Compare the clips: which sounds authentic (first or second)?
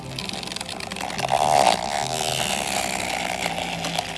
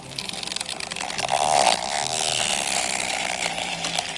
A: first